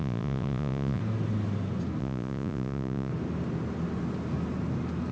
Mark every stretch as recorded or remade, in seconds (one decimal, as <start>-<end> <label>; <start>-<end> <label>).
0.0-1.0 remade; 1.0-2.0 recorded; 2.0-3.1 remade; 3.1-5.1 recorded